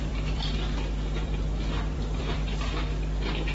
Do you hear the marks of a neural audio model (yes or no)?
yes